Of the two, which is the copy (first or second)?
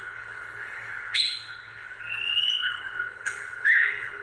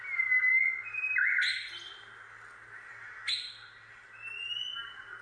first